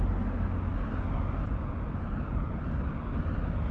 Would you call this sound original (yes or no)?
yes